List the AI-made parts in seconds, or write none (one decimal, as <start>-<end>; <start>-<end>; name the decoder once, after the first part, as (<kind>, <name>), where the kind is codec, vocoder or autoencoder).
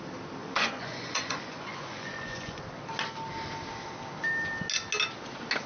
0.4-2.6 (vocoder, Vocos)